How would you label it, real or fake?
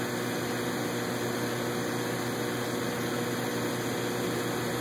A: real